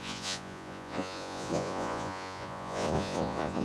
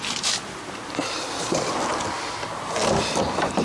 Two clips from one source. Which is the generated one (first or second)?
first